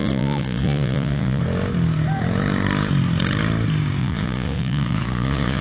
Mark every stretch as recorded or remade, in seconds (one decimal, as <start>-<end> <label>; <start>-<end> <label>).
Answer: 0.0-1.4 remade; 1.4-4.0 recorded; 4.0-5.6 remade